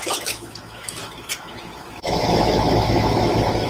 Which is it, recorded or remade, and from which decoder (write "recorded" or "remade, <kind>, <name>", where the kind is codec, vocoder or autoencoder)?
remade, autoencoder, DAC-VAE